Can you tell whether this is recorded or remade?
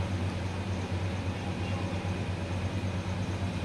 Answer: recorded